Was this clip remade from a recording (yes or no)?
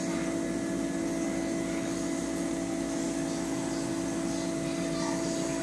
no